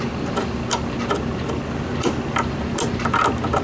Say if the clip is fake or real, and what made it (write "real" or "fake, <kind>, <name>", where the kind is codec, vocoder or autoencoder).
real